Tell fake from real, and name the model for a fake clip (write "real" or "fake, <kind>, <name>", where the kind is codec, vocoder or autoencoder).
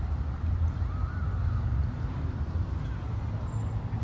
fake, vocoder, BigVGAN v2